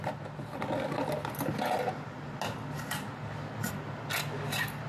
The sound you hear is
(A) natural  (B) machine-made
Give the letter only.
A